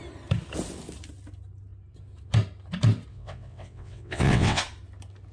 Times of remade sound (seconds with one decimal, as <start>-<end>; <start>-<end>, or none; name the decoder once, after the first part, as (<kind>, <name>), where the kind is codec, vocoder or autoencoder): 3.1-4.6 (vocoder, WaveNeXt)